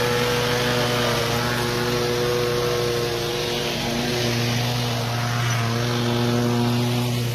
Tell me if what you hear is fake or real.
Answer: real